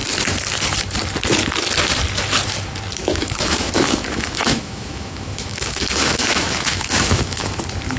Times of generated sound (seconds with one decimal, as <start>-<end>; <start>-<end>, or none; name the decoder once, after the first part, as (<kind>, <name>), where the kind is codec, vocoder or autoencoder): 3.0-7.6 (autoencoder, DAC-VAE)